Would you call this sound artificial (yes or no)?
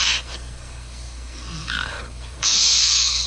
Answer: yes